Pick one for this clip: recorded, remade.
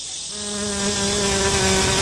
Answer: recorded